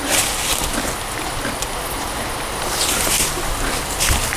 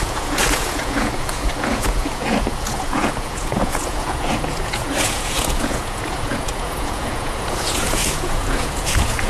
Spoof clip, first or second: second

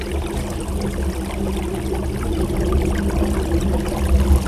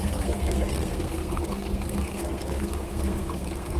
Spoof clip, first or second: second